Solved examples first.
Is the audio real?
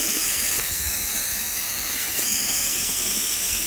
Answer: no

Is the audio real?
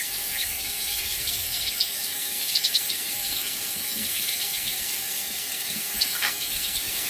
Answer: no